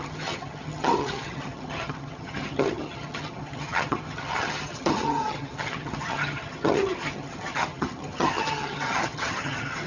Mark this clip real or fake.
fake